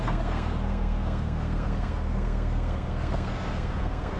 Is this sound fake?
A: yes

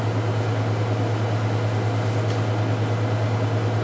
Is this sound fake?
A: no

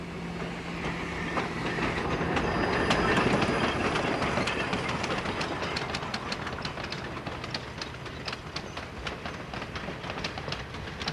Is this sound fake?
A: no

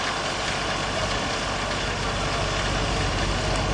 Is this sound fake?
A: no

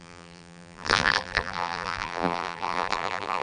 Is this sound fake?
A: yes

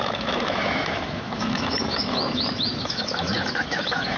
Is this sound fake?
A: yes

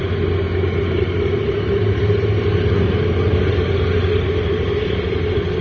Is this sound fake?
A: no